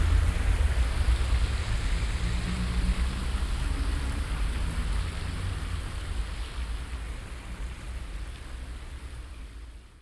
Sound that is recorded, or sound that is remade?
recorded